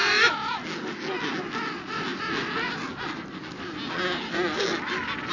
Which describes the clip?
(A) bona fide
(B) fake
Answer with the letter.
A